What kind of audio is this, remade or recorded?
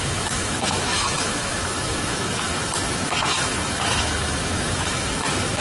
remade